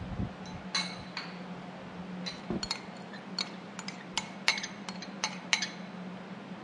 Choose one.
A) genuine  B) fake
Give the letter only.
A